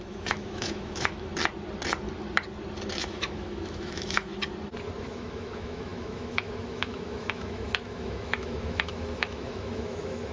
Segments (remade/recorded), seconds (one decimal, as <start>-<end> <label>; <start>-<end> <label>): 0.0-1.3 remade; 1.3-3.0 recorded; 3.0-4.3 remade; 4.3-5.0 recorded; 5.0-10.3 remade

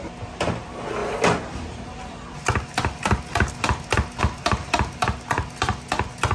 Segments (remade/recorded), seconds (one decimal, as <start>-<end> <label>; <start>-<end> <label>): 0.0-6.3 recorded

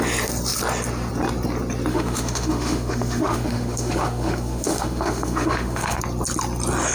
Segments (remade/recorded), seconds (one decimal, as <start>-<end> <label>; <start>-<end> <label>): 0.0-1.9 recorded; 1.9-6.0 remade; 6.0-6.9 recorded

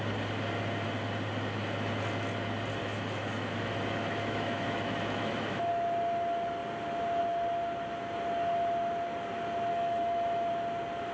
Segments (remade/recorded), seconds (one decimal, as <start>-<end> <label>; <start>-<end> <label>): 0.0-2.8 recorded; 2.8-5.7 remade; 5.7-9.7 recorded; 9.7-10.5 remade; 10.5-11.1 recorded

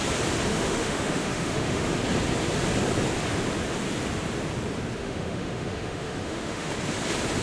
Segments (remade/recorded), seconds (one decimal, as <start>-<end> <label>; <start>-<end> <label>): 0.0-0.5 recorded; 0.5-1.9 remade; 1.9-5.0 recorded; 5.0-6.7 remade; 6.7-7.4 recorded

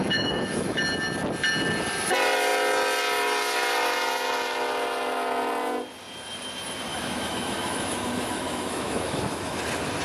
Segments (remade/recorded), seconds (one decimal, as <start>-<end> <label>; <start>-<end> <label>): 0.0-0.8 remade; 0.8-6.9 recorded; 6.9-9.6 remade; 9.6-10.0 recorded

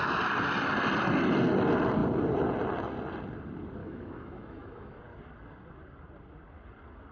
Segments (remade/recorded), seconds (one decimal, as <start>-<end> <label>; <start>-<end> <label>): 0.0-3.8 recorded; 3.8-5.0 remade; 5.0-7.1 recorded

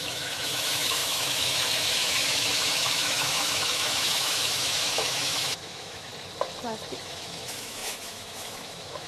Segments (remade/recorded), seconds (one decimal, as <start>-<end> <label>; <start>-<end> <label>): 0.0-6.1 remade; 6.1-7.0 recorded; 7.0-9.1 remade